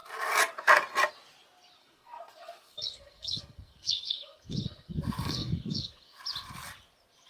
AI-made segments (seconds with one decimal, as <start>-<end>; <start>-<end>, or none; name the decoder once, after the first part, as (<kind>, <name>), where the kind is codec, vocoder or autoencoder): 1.8-6.2 (codec, SNAC)